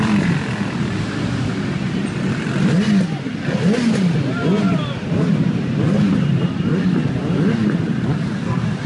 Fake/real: real